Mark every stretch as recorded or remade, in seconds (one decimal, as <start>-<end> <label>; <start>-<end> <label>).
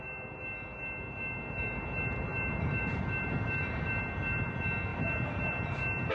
0.0-2.3 recorded; 2.3-4.0 remade; 4.0-4.9 recorded; 4.9-6.1 remade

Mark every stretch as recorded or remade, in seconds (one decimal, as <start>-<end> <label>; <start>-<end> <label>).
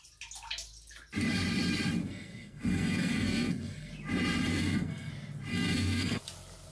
0.0-2.0 recorded; 2.0-3.9 remade; 3.9-4.5 recorded; 4.5-5.1 remade; 5.1-5.5 recorded; 5.5-6.2 remade; 6.2-6.7 recorded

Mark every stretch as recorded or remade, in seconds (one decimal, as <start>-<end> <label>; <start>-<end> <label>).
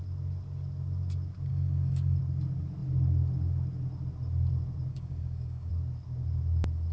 0.0-1.5 recorded; 1.5-2.2 remade; 2.2-4.9 recorded; 4.9-5.7 remade; 5.7-6.9 recorded